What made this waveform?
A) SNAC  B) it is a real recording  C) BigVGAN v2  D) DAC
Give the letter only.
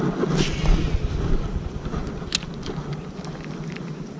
B